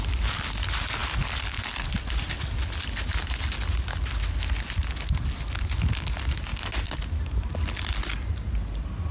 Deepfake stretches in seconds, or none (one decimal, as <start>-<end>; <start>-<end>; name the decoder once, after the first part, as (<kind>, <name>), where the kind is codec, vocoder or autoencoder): none